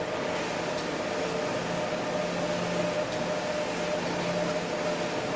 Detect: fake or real real